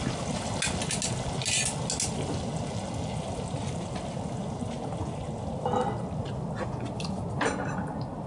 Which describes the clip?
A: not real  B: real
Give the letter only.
B